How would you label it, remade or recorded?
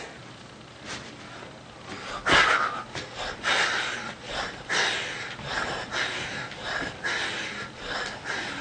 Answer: recorded